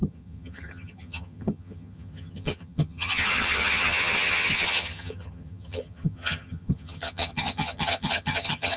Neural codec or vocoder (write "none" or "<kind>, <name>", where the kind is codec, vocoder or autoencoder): vocoder, HiFi-GAN